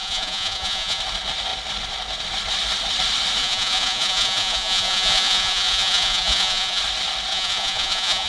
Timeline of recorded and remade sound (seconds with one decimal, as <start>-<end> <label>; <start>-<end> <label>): 0.0-1.0 remade; 1.0-3.4 recorded; 3.4-6.8 remade; 6.8-7.3 recorded; 7.3-8.3 remade